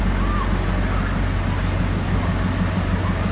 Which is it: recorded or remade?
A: recorded